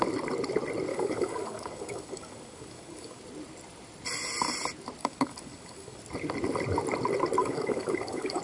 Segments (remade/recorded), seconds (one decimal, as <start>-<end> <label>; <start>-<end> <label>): 0.0-0.9 recorded; 0.9-3.2 remade; 3.2-5.0 recorded; 5.0-6.0 remade; 6.0-7.4 recorded; 7.4-8.4 remade